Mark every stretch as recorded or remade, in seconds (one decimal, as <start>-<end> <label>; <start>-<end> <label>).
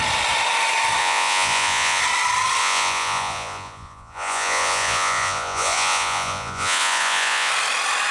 0.0-1.0 recorded; 1.0-2.0 remade; 2.0-2.6 recorded; 2.6-7.5 remade; 7.5-8.1 recorded